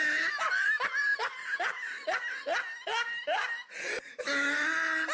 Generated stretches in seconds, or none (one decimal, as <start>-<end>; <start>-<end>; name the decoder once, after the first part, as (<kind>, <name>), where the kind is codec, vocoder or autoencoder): none